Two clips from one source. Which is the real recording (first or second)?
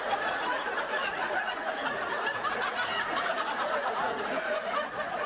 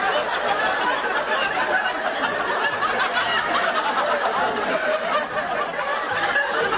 second